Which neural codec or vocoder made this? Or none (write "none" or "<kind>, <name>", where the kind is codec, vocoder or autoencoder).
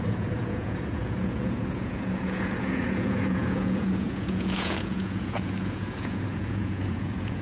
vocoder, Vocos